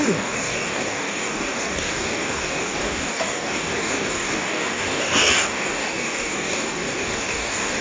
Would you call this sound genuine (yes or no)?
no